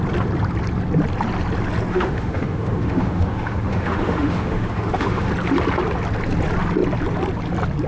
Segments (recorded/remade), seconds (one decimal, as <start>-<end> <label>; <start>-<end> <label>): 0.0-1.9 recorded; 1.9-5.3 remade; 5.3-7.9 recorded